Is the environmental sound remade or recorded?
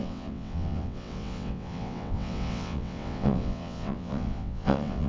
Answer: remade